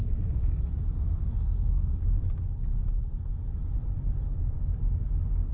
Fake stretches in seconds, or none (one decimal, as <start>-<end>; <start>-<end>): 0.0-0.4; 1.3-1.9